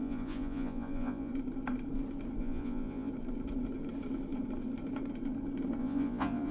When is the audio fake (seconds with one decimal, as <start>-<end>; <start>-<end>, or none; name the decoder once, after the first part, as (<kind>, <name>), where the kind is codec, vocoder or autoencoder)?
0.0-1.3 (vocoder, Vocos); 2.4-3.1; 5.8-6.5